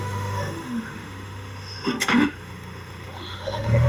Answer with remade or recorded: remade